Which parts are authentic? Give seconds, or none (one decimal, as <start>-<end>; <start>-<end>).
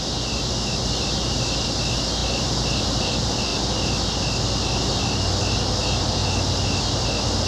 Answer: 0.0-7.5